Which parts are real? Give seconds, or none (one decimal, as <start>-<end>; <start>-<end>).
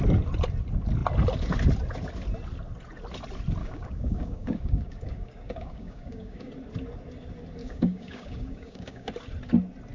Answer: 0.0-3.6; 6.5-7.6; 9.1-9.9